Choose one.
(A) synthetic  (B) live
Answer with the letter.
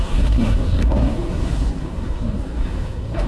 A